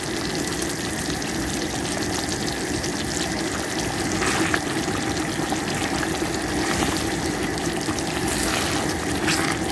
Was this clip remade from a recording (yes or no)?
no